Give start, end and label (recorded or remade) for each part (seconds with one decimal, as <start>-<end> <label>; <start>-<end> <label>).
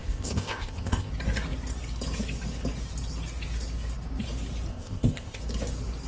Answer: 0.0-1.1 remade; 1.1-4.7 recorded; 4.7-5.4 remade; 5.4-6.1 recorded